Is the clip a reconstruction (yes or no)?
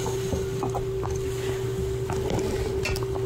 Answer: no